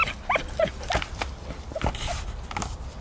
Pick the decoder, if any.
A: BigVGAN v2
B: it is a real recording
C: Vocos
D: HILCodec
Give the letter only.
B